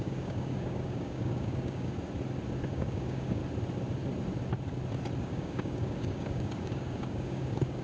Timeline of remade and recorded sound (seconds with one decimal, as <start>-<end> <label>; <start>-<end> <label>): 0.0-1.9 remade; 1.9-2.7 recorded; 2.7-3.4 remade; 3.4-5.2 recorded; 5.2-7.8 remade